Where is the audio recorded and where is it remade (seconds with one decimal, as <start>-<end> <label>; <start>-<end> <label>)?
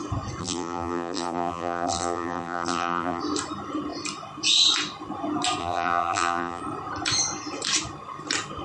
0.0-0.4 recorded; 0.4-3.2 remade; 3.2-5.6 recorded; 5.6-6.6 remade; 6.6-8.6 recorded